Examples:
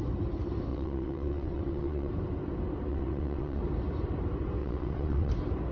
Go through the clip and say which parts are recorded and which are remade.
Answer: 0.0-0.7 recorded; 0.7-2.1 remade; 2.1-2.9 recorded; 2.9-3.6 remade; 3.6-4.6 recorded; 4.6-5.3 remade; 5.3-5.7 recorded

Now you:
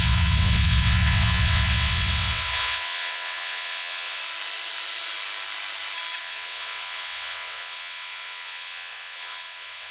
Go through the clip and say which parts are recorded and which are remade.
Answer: 0.0-4.2 remade; 4.2-6.2 recorded; 6.2-9.9 remade

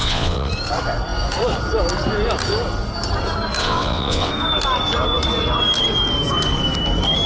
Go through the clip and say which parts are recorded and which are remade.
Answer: 0.0-0.5 remade; 0.5-3.6 recorded; 3.6-4.3 remade; 4.3-7.3 recorded

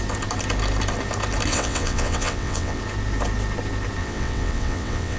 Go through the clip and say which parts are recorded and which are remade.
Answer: 0.0-1.5 recorded; 1.5-2.8 remade; 2.8-4.0 recorded; 4.0-5.2 remade

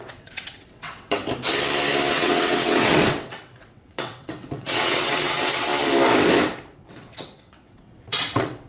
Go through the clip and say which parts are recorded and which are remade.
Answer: 0.0-1.2 remade; 1.2-2.1 recorded; 2.1-5.7 remade; 5.7-6.9 recorded; 6.9-8.7 remade

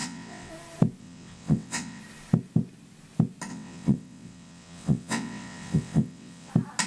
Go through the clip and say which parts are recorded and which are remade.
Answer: 0.0-0.5 remade; 0.5-1.0 recorded; 1.0-2.0 remade; 2.0-3.5 recorded; 3.5-6.5 remade; 6.5-6.9 recorded